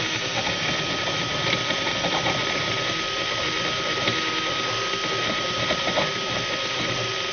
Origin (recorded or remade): recorded